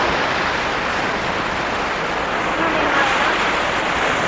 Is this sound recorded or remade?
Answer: recorded